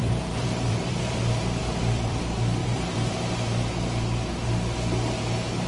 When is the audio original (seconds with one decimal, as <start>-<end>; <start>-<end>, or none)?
1.2-1.6; 2.2-2.6; 3.3-5.7